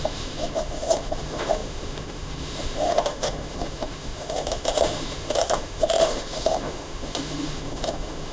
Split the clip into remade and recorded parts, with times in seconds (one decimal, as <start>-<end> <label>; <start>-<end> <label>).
0.0-8.3 remade